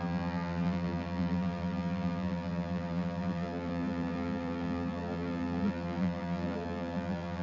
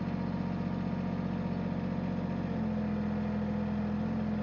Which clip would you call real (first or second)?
second